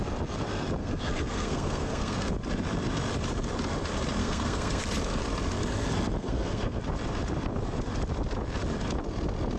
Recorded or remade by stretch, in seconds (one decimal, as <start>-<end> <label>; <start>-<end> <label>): 0.0-0.8 recorded; 0.8-2.3 remade; 2.3-4.2 recorded; 4.2-4.8 remade; 4.8-6.2 recorded; 6.2-6.8 remade; 6.8-9.6 recorded

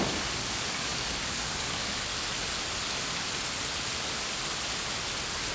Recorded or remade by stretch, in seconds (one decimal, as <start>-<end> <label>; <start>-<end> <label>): 0.0-2.1 remade; 2.1-5.5 recorded

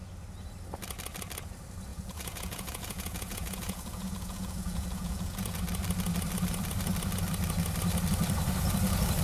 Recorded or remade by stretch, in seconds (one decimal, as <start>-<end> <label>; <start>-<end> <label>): 0.0-1.9 recorded; 1.9-5.6 remade; 5.6-9.2 recorded

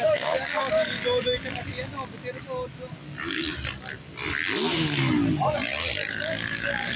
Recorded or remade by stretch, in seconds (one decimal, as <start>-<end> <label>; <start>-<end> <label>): 0.0-1.9 remade; 1.9-6.1 recorded; 6.1-7.0 remade

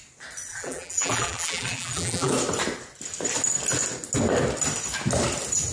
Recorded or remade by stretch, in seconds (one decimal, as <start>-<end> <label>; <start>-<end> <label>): 0.0-0.5 recorded; 0.5-2.3 remade; 2.3-5.7 recorded

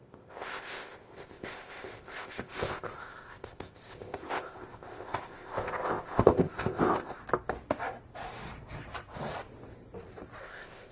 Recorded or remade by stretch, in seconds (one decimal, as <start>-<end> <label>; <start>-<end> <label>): 0.0-7.2 remade; 7.2-10.4 recorded; 10.4-10.9 remade